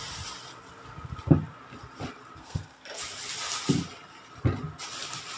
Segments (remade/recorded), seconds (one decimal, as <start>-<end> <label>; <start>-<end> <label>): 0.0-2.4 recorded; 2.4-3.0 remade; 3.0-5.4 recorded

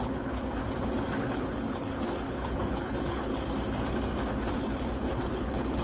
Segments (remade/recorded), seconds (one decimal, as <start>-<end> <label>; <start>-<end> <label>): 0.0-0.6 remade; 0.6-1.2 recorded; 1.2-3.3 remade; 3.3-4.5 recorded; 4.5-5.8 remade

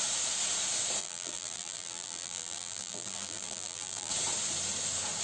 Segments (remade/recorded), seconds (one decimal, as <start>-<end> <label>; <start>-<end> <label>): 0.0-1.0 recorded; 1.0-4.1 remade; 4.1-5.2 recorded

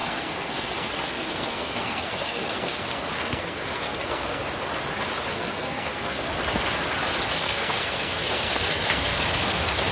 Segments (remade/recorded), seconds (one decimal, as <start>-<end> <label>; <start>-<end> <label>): 0.0-4.4 remade; 4.4-5.3 recorded; 5.3-6.3 remade; 6.3-7.3 recorded; 7.3-9.9 remade

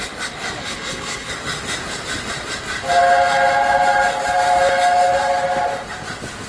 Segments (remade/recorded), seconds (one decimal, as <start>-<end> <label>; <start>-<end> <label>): 0.0-0.6 recorded; 0.6-1.3 remade; 1.3-6.5 recorded

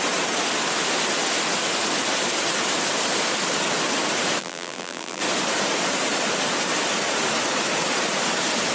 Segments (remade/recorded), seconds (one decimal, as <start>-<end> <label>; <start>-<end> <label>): 0.0-4.4 recorded; 4.4-5.2 remade; 5.2-8.7 recorded

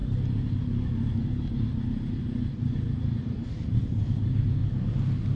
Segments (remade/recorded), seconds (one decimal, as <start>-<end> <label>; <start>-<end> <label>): 0.0-3.2 recorded; 3.2-4.6 remade; 4.6-5.4 recorded

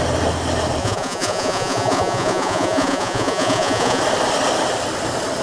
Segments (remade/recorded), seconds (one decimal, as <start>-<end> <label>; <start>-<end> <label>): 0.0-0.8 recorded; 0.8-4.0 remade; 4.0-5.4 recorded